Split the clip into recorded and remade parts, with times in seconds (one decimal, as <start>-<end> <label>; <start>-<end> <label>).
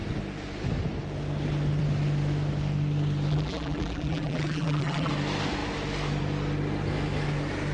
0.0-3.3 recorded; 3.3-5.1 remade; 5.1-7.7 recorded